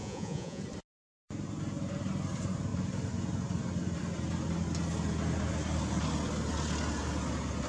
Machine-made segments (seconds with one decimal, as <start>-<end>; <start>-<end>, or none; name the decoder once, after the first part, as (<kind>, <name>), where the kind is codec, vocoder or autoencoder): 0.0-0.6 (vocoder, Vocos)